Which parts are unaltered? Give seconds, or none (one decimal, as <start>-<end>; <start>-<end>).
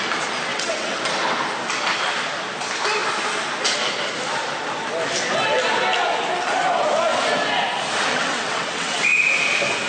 0.0-0.5; 1.0-8.1; 9.0-9.9